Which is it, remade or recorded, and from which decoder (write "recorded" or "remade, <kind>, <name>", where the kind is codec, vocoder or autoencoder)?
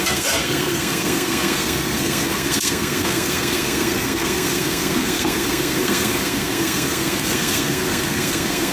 remade, codec, SNAC